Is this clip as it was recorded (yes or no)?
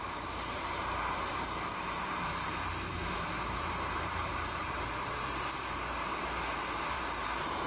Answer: no